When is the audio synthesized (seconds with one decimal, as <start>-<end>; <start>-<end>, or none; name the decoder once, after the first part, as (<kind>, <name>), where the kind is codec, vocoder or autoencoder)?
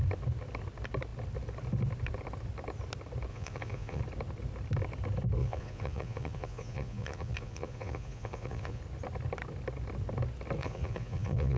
3.3-4.0 (vocoder, Vocos); 5.4-8.8; 10.6-11.6